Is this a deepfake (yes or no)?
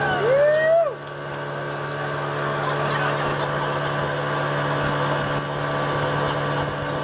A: no